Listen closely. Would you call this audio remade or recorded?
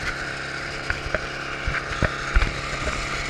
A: recorded